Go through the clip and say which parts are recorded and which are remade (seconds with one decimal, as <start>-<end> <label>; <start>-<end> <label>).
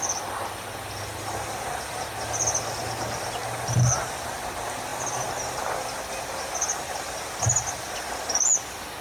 0.0-4.9 recorded; 4.9-5.5 remade; 5.5-9.0 recorded